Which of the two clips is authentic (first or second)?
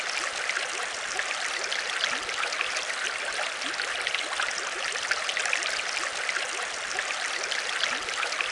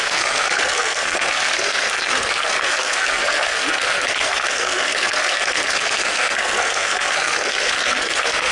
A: first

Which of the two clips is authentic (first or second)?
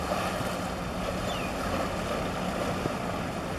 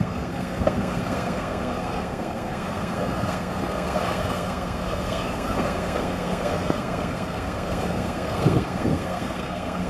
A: first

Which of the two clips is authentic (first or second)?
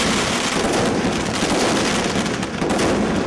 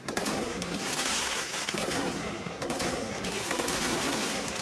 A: first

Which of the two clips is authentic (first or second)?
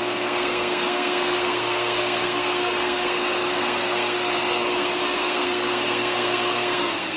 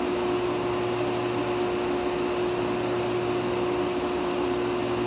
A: second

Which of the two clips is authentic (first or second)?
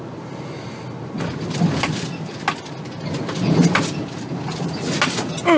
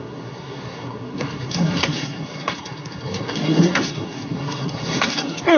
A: first